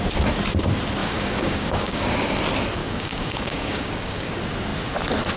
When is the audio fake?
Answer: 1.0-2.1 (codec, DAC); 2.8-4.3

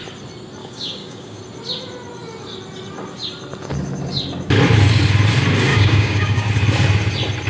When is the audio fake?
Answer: 0.6-1.4 (codec, DAC); 5.7-6.5

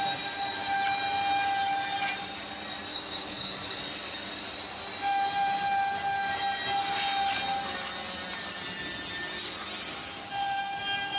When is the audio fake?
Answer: 2.9-3.8 (codec, DAC)

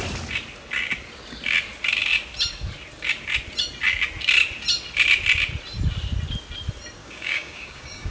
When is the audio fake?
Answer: 7.0-8.1 (codec, DAC)

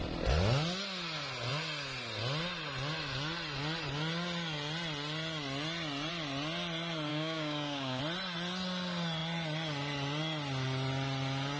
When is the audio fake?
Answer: 7.1-8.0 (codec, DAC)

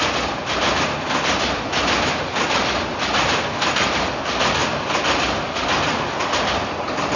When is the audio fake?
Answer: none

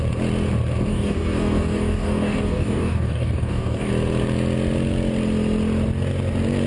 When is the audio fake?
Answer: 0.9-3.9 (codec, DAC)

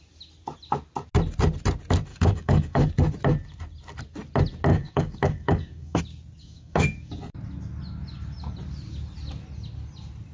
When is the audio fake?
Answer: 2.1-2.9 (codec, DAC); 4.7-6.0; 6.4-7.2